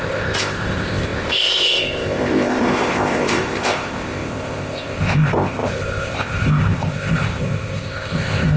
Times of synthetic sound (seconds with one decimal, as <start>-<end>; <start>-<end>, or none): 0.0-8.6